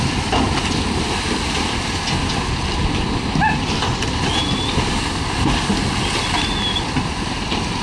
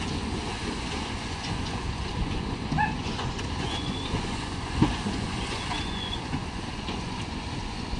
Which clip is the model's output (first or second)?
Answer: second